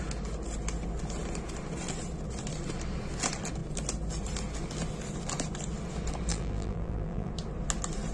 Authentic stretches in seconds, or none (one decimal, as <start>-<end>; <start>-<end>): 0.0-6.3; 7.3-8.1